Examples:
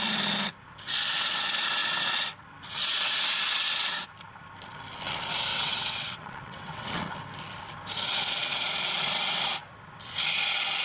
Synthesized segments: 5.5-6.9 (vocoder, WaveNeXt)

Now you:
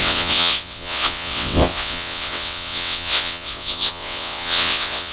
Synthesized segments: 0.0-5.1 (vocoder, WaveNeXt)